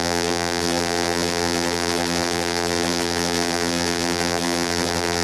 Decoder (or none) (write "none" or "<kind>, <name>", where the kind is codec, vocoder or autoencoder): vocoder, BigVGAN v2